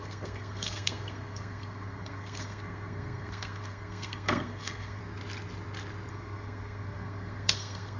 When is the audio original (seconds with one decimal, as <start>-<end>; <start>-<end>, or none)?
5.0-6.1